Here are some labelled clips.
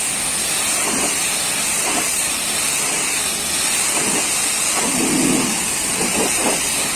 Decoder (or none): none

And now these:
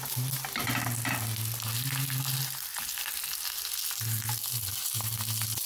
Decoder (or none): none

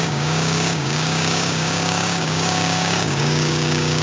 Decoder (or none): codec, DAC